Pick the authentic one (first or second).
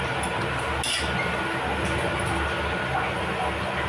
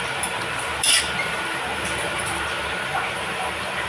first